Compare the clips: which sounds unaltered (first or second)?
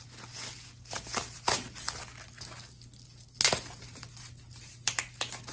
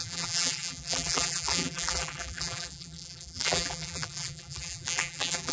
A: first